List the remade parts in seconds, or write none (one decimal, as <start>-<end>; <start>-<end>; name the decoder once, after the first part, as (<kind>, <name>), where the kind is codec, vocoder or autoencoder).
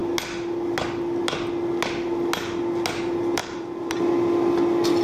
3.4-4.0 (vocoder, BigVGAN v2)